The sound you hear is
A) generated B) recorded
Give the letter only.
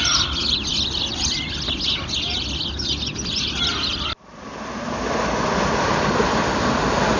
B